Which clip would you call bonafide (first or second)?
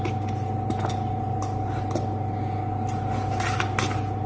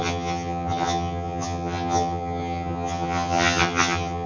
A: first